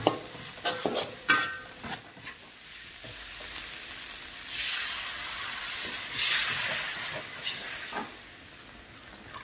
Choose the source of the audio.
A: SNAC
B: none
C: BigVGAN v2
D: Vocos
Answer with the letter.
B